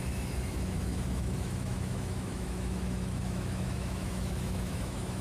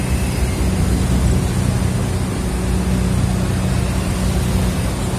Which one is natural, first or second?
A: second